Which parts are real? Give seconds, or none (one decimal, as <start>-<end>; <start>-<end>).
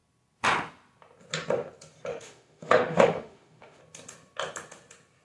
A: 0.0-2.1; 3.8-5.2